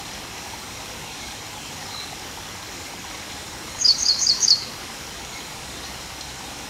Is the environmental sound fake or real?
fake